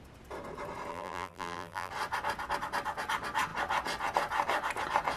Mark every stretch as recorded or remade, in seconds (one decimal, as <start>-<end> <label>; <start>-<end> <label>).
0.0-0.9 recorded; 0.9-1.9 remade; 1.9-5.2 recorded